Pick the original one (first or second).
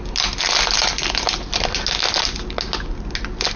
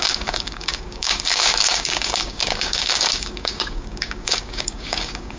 first